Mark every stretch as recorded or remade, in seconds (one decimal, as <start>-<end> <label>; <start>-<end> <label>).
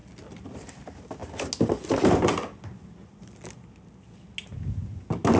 0.0-5.4 recorded